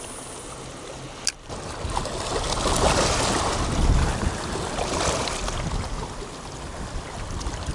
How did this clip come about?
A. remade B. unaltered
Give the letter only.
B